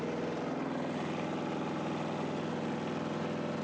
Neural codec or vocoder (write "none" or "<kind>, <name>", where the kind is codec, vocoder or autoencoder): none